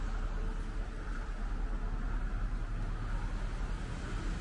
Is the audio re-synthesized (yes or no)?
no